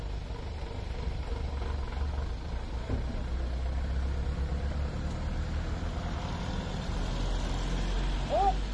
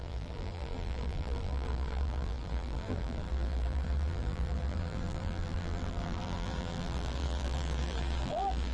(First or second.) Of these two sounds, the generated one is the second